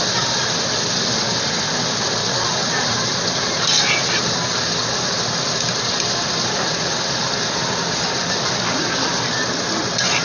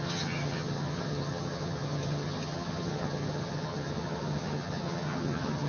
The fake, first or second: second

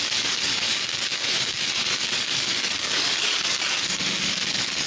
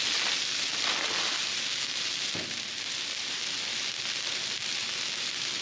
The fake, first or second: first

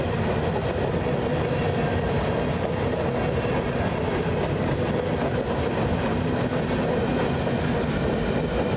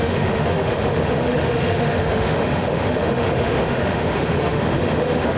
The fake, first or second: second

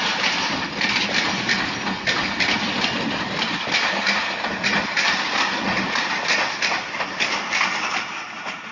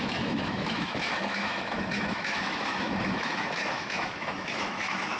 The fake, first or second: second